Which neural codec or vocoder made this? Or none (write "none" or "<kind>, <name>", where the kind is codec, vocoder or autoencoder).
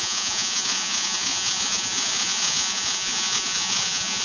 vocoder, Vocos